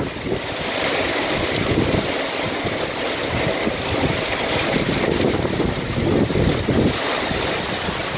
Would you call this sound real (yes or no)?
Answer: yes